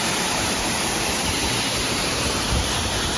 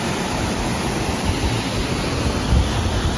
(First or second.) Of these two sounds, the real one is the second